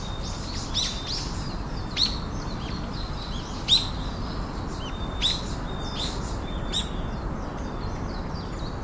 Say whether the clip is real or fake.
real